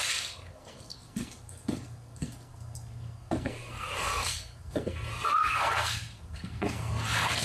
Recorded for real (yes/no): no